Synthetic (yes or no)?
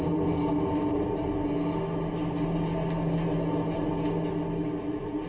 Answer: no